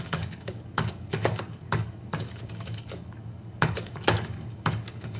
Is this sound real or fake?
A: fake